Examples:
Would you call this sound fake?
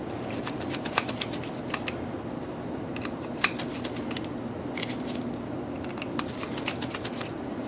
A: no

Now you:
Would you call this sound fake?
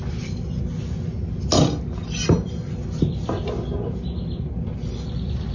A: no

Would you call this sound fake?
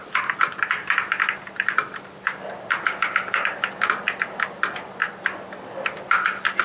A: no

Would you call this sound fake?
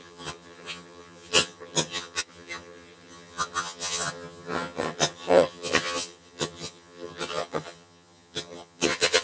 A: yes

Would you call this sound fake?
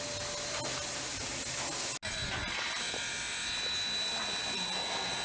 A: no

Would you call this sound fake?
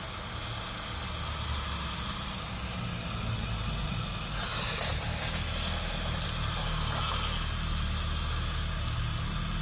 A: no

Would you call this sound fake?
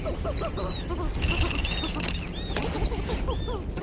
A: no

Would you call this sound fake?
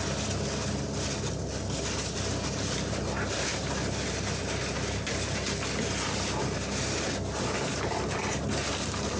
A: no